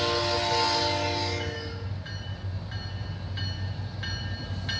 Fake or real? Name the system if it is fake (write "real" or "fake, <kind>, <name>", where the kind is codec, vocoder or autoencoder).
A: real